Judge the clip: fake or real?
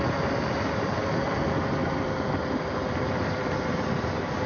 real